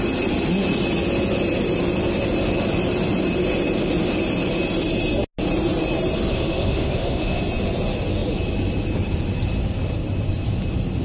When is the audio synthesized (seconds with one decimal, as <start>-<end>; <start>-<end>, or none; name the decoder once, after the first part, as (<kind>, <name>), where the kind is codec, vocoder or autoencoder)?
6.3-7.4 (autoencoder, DAC-VAE)